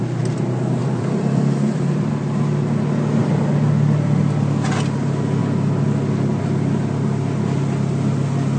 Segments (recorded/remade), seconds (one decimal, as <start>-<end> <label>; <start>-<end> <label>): 0.0-0.8 recorded; 0.8-2.1 remade; 2.1-8.6 recorded